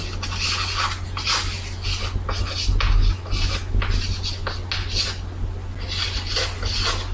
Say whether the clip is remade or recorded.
recorded